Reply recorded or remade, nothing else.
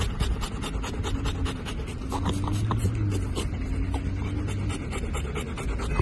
recorded